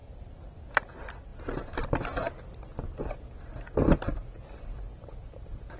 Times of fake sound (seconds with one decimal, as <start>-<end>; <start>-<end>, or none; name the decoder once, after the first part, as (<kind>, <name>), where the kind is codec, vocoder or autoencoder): none